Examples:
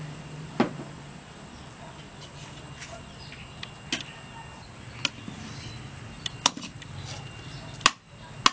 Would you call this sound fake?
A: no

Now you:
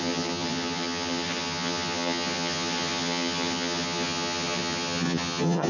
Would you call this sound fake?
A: yes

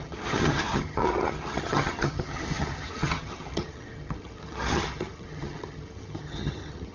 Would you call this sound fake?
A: yes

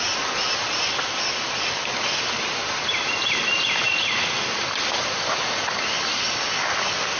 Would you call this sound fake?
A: no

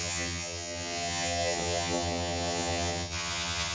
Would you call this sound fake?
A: yes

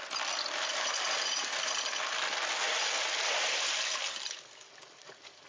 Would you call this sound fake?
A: no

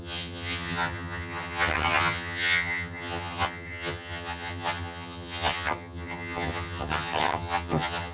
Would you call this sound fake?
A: yes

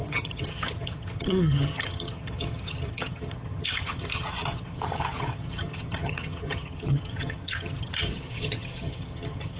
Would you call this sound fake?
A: yes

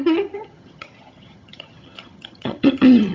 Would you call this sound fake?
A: yes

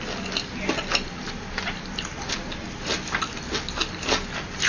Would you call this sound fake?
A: no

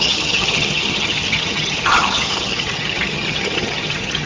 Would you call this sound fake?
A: yes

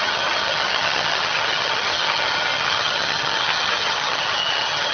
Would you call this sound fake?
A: yes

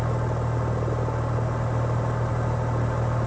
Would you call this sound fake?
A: no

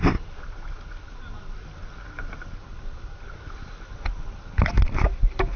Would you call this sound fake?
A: no